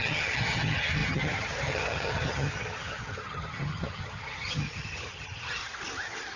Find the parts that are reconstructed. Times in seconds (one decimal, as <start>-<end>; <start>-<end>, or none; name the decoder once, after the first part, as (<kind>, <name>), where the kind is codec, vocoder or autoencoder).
0.0-5.6 (vocoder, HiFi-GAN)